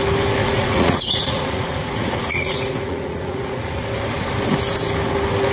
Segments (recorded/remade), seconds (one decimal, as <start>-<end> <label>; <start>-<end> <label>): 0.0-0.4 recorded; 0.4-3.7 remade; 3.7-5.5 recorded